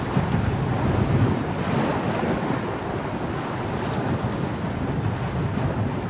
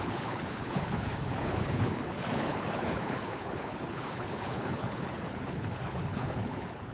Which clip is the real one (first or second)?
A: first